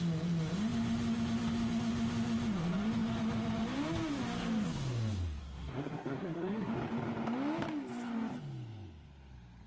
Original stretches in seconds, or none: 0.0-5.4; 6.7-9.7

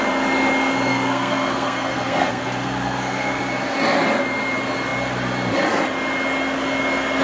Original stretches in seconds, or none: 0.0-0.9; 3.4-7.2

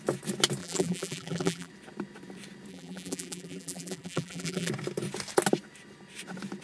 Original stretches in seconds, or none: 0.0-0.6; 1.7-2.7; 4.7-6.6

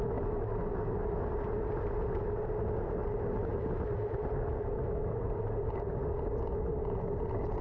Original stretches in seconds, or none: 0.0-5.0; 5.7-7.6

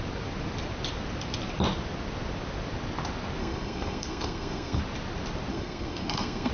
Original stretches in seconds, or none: 0.0-3.4; 4.8-5.5

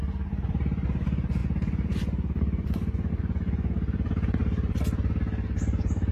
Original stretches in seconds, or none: 0.0-4.4; 5.2-6.1